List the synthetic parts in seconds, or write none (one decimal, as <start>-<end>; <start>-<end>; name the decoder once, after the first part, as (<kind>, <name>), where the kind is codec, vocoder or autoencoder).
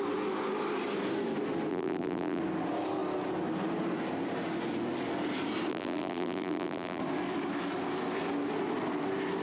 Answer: 1.7-2.4 (vocoder, BigVGAN v2); 5.7-7.0